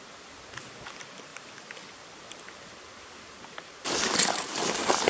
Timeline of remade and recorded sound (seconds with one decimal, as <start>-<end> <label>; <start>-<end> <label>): 0.0-1.3 recorded; 1.3-3.2 remade; 3.2-5.1 recorded